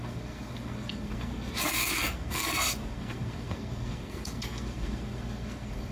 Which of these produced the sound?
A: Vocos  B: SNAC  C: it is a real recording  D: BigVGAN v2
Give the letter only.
B